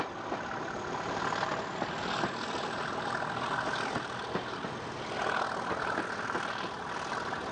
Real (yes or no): yes